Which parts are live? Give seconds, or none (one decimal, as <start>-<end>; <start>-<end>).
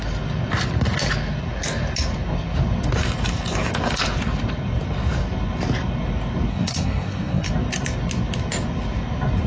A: 0.0-6.5; 7.5-9.5